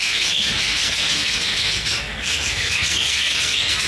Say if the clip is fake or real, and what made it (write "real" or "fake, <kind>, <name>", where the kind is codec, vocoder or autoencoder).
fake, codec, SNAC